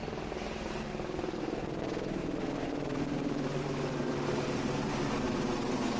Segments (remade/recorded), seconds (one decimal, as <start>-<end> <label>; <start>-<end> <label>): 0.0-6.0 recorded